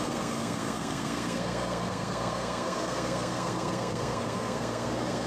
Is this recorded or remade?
remade